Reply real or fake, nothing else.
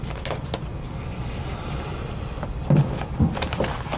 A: real